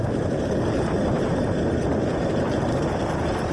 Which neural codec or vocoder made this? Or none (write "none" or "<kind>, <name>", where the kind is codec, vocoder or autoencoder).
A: none